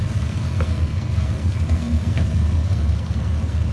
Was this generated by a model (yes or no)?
yes